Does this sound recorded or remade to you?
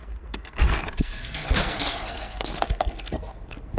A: remade